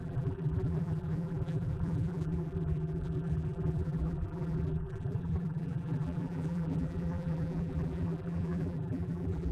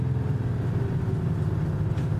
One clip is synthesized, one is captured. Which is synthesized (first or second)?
first